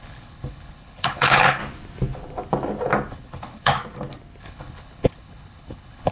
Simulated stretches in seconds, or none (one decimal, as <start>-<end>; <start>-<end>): 0.0-1.6; 3.1-3.8; 4.4-6.1

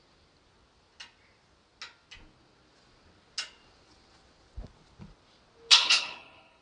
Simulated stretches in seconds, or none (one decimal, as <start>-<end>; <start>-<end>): 5.7-6.6